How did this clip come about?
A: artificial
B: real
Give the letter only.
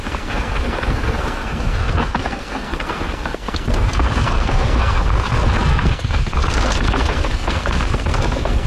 A